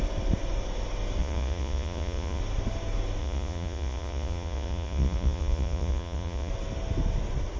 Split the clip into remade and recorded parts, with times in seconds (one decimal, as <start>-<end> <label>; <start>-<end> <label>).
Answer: 0.0-1.2 recorded; 1.2-2.4 remade; 2.4-3.2 recorded; 3.2-6.5 remade; 6.5-7.6 recorded